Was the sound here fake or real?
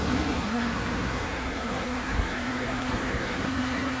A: fake